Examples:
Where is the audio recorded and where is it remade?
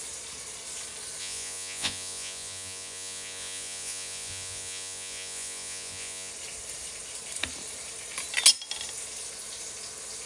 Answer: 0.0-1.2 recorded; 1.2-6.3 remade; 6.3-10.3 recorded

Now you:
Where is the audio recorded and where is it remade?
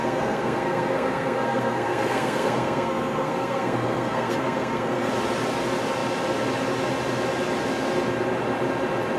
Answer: 0.0-5.1 remade; 5.1-9.2 recorded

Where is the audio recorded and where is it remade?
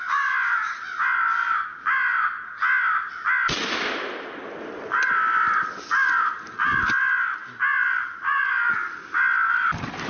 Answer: 0.0-10.1 recorded